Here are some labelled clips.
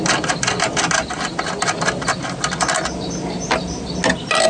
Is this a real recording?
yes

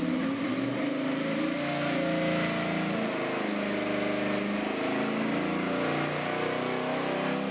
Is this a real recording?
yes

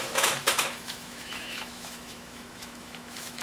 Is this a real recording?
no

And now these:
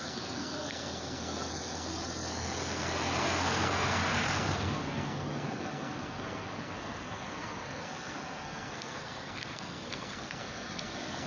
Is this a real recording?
no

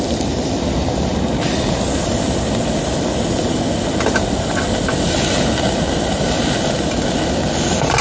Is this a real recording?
yes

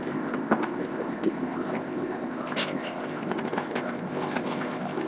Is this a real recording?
no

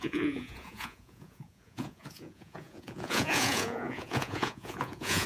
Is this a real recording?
no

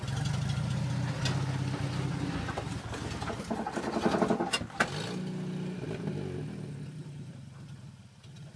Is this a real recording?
yes